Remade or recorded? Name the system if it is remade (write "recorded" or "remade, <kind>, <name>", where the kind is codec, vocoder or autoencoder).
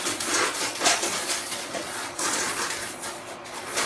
remade, vocoder, Vocos